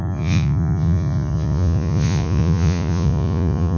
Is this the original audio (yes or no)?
no